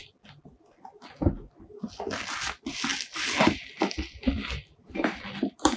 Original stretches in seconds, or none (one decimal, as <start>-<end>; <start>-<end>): 0.0-5.8